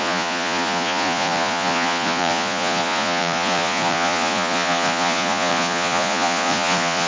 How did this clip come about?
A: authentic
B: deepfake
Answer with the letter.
B